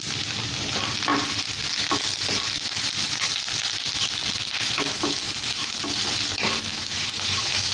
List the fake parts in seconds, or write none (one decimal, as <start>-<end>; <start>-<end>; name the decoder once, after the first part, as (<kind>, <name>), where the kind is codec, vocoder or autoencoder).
4.4-5.8 (autoencoder, DAC-VAE); 6.7-7.7